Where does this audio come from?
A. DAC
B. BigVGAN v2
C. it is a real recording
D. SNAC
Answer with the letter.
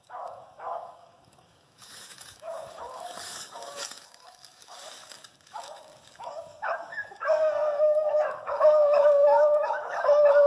A